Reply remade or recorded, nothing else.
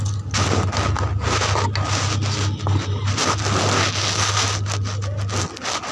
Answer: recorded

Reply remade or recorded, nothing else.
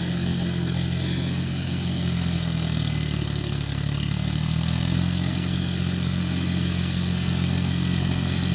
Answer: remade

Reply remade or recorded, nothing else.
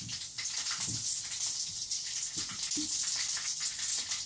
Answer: recorded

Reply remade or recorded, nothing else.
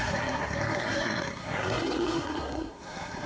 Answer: remade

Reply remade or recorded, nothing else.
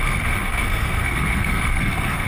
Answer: remade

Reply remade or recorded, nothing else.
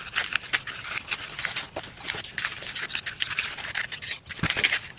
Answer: recorded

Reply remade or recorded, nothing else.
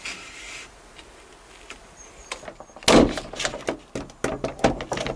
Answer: recorded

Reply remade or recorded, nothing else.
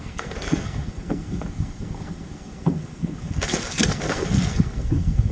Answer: remade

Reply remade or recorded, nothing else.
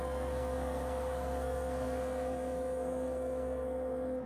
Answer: remade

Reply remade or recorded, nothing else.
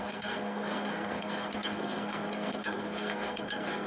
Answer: remade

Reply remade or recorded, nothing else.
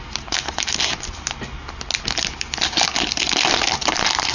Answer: recorded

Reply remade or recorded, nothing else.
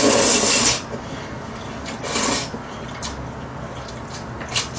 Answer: recorded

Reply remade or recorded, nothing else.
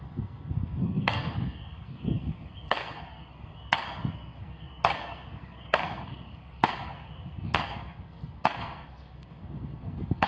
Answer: remade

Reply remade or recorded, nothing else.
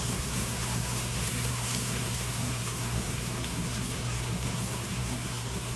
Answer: remade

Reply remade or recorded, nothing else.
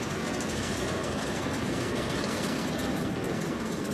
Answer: remade